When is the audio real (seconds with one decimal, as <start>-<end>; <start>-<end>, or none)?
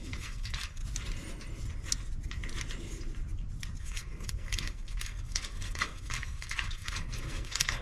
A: 0.8-3.8